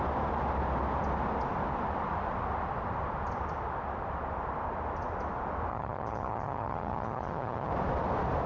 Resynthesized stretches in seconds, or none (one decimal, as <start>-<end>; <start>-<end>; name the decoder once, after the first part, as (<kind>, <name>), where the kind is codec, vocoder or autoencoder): 5.7-7.7 (vocoder, HiFi-GAN)

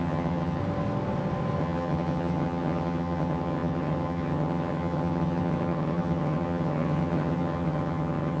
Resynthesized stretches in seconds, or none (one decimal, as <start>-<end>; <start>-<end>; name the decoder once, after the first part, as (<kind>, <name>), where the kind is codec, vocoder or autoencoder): 0.0-0.6 (vocoder, HiFi-GAN); 1.6-8.4

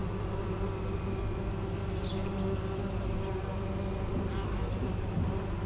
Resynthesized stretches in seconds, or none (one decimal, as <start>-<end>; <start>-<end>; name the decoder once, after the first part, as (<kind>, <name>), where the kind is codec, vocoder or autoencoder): none

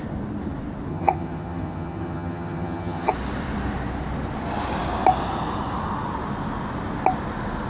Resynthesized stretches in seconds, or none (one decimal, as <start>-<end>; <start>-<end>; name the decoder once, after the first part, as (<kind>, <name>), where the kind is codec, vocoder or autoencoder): 0.9-3.1 (vocoder, HiFi-GAN)

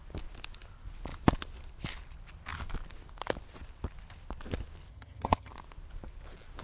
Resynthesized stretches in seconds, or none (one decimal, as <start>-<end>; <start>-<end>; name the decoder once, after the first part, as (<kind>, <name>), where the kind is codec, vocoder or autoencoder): 4.9-5.5 (vocoder, HiFi-GAN)